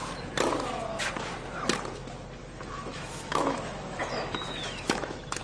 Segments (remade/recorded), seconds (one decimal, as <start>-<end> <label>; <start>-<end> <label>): 0.0-2.4 recorded; 2.4-5.4 remade